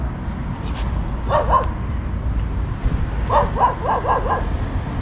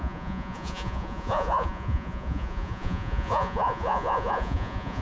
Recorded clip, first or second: first